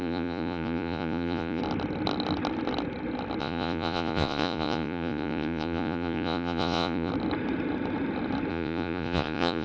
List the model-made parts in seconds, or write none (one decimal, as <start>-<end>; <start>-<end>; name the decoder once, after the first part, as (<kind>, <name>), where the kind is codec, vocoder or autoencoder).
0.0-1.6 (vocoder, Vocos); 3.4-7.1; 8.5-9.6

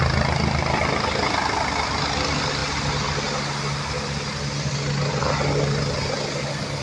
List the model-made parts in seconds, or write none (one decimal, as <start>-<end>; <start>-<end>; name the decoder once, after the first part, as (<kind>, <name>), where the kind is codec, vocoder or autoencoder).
none

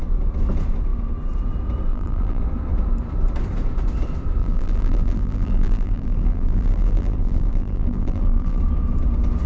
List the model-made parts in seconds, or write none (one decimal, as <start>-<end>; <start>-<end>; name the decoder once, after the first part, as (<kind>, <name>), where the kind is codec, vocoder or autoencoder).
1.9-2.4 (vocoder, BigVGAN v2); 4.4-8.6

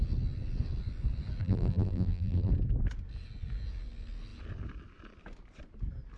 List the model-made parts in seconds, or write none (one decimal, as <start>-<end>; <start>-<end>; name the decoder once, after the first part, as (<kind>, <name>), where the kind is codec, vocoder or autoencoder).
1.4-2.5 (vocoder, BigVGAN v2)

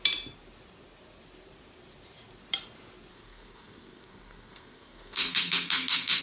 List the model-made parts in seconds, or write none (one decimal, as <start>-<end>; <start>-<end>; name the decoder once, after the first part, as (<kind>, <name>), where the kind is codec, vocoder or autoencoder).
3.1-6.2 (codec, SNAC)